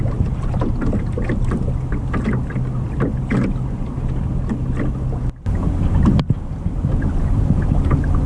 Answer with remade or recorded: recorded